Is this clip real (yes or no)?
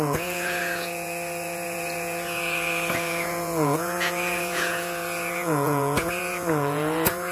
no